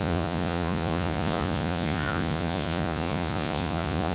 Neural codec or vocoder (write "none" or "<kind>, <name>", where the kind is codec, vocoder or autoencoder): vocoder, Vocos